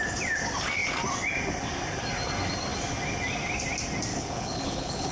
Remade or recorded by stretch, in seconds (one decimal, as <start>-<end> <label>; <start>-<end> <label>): 0.0-4.1 recorded; 4.1-5.1 remade